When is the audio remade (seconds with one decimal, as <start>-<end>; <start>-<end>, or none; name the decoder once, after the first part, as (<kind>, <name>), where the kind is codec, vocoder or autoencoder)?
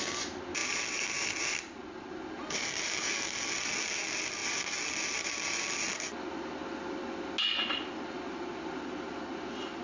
none